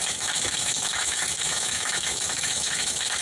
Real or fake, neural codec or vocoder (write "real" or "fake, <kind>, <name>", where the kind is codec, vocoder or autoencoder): fake, autoencoder, DAC-VAE